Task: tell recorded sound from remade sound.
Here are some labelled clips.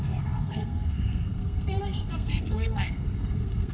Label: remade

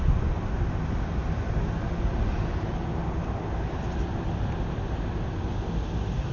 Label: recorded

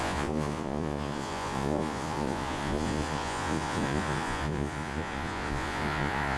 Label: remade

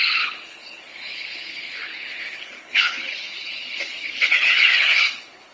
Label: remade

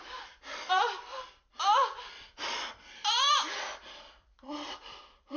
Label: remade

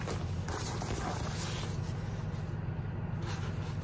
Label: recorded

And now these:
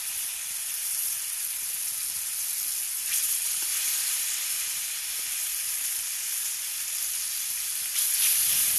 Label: recorded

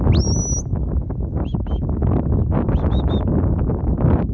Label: recorded